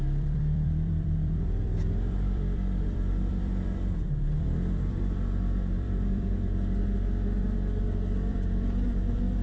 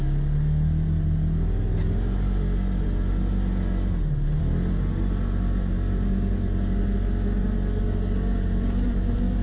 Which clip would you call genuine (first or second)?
second